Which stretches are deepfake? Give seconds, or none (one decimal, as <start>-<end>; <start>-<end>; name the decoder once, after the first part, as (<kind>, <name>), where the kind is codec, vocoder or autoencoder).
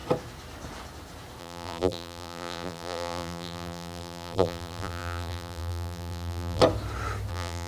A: 1.4-6.6 (vocoder, BigVGAN v2); 7.3-7.7